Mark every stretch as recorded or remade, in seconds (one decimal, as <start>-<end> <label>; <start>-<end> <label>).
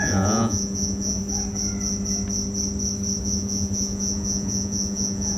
0.0-1.2 remade; 1.2-3.2 recorded; 3.2-5.4 remade